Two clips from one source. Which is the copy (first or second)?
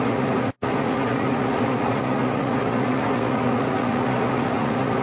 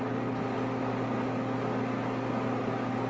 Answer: first